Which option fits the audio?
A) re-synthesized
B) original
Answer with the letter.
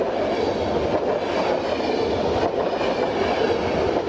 B